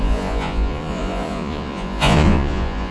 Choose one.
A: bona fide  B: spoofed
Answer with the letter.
B